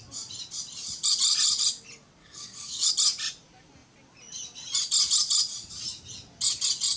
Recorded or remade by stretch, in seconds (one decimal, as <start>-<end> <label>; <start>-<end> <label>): 0.0-2.2 recorded; 2.2-2.9 remade; 2.9-7.0 recorded